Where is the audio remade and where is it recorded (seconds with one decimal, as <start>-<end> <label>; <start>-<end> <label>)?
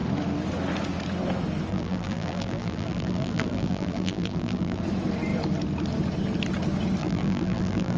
0.0-1.7 recorded; 1.7-4.8 remade; 4.8-7.0 recorded; 7.0-8.0 remade